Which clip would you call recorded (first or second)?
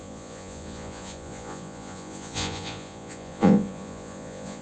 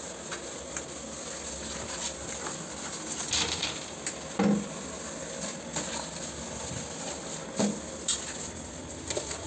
second